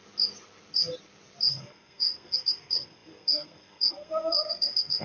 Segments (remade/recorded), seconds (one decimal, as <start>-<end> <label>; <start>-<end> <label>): 0.0-1.5 recorded; 1.5-5.0 remade